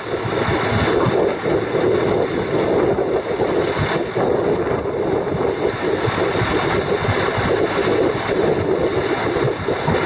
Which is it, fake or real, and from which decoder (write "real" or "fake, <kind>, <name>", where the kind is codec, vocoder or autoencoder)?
real